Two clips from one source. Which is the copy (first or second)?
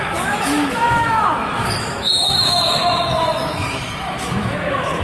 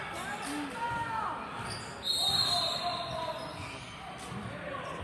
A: first